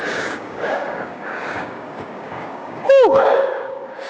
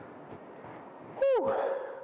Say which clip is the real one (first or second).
second